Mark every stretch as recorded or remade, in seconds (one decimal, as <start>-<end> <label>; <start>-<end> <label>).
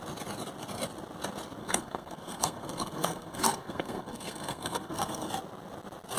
0.0-1.6 recorded; 1.6-5.3 remade; 5.3-6.2 recorded